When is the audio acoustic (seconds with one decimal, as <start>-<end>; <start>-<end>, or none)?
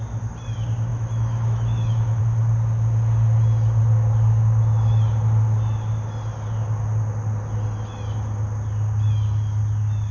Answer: 0.0-0.9; 2.2-10.1